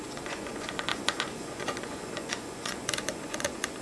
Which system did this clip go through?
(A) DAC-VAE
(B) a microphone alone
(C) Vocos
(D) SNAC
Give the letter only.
C